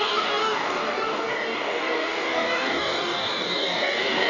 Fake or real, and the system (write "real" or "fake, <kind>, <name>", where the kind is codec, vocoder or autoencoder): fake, codec, DAC